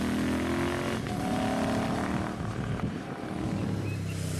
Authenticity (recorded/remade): recorded